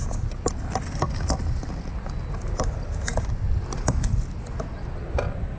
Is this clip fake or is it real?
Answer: real